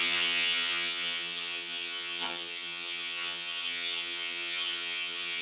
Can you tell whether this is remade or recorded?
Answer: remade